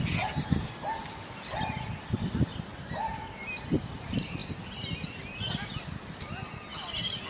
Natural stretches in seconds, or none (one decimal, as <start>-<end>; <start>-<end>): 0.0-7.3